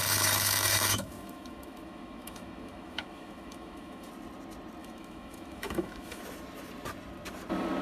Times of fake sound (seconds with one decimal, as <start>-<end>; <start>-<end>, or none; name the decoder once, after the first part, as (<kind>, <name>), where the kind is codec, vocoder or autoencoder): 0.0-4.1 (autoencoder, DAC-VAE); 4.8-6.2